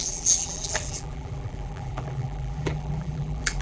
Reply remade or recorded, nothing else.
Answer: remade